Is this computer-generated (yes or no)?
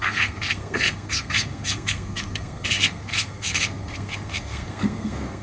yes